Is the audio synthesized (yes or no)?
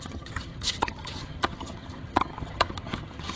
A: yes